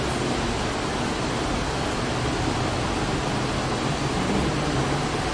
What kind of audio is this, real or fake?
real